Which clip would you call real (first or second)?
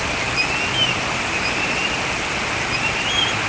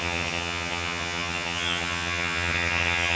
first